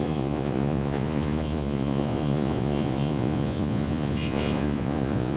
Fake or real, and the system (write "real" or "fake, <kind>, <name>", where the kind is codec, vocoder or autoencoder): fake, vocoder, Vocos